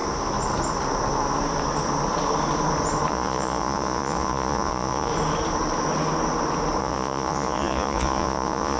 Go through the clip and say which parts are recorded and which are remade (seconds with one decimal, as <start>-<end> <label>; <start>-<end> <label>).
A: 0.0-3.1 recorded; 3.1-5.1 remade; 5.1-6.8 recorded; 6.8-8.8 remade